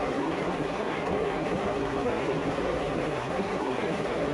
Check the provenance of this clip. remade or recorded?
remade